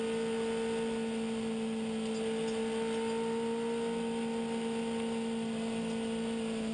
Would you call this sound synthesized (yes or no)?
no